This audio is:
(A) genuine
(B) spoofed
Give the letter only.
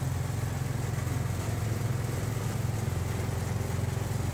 A